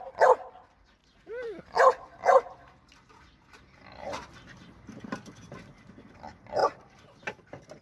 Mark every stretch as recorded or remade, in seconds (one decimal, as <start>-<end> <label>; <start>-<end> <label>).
0.0-7.8 recorded